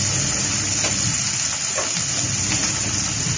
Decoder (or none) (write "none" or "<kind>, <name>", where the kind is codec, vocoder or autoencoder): none